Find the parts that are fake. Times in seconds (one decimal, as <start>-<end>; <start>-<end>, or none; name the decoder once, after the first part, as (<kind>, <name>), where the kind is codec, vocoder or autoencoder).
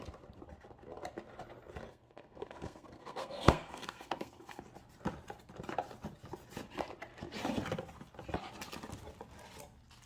1.9-4.6 (codec, SNAC)